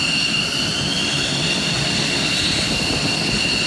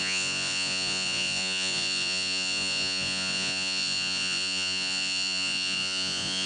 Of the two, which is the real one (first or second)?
first